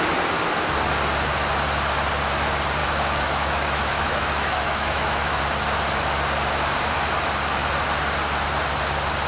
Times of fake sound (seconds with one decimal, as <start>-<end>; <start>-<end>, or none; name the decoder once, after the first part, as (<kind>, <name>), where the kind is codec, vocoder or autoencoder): 2.8-5.4 (autoencoder, DAC-VAE)